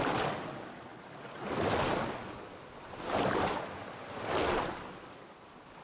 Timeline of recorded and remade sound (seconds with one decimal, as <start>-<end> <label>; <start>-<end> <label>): 0.0-5.8 recorded